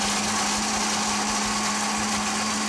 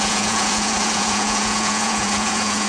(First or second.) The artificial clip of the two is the second